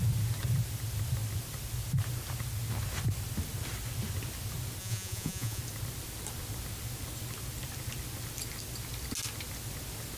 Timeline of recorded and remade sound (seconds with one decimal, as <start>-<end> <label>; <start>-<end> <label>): 0.0-4.8 recorded; 4.8-5.6 remade; 5.6-10.2 recorded